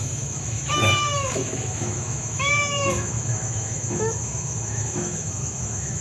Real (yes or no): no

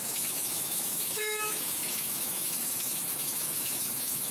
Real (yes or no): no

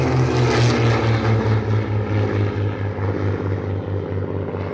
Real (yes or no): yes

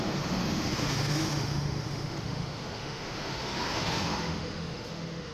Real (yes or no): no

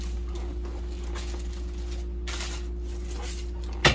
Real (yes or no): yes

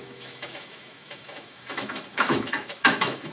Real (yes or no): no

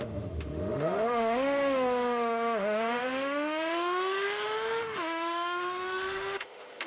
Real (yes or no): no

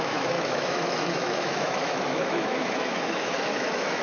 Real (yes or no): no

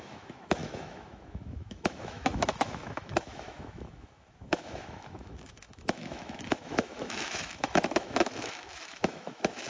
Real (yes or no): no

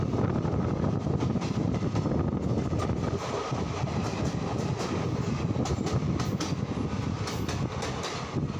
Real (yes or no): yes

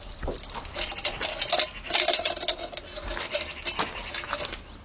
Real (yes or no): yes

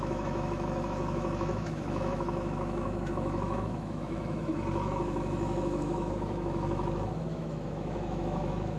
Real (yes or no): no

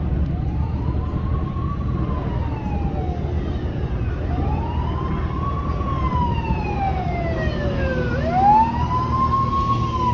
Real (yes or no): yes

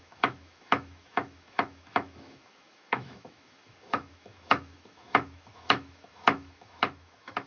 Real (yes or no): no